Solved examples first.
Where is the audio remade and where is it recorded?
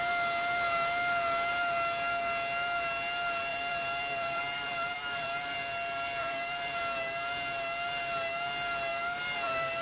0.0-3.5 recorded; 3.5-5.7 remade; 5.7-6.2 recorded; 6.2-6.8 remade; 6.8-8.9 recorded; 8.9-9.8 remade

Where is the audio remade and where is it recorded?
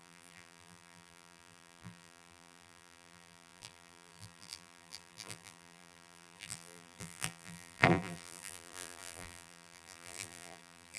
0.0-11.0 remade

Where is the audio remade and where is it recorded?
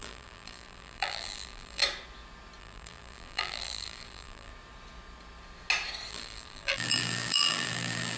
0.0-1.8 remade; 1.8-2.6 recorded; 2.6-4.5 remade; 4.5-6.1 recorded; 6.1-8.2 remade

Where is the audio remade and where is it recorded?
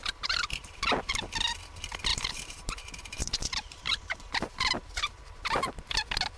0.0-1.1 remade; 1.1-2.1 recorded; 2.1-5.9 remade; 5.9-6.4 recorded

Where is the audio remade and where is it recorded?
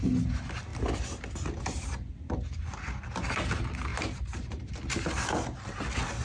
0.0-3.9 recorded; 3.9-4.8 remade; 4.8-6.2 recorded